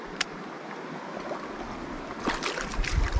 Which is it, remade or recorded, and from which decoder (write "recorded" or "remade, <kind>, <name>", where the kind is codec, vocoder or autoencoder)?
recorded